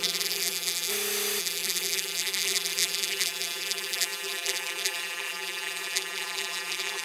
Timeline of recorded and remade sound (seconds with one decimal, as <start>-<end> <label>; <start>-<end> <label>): 0.0-0.9 remade; 0.9-1.4 recorded; 1.4-7.0 remade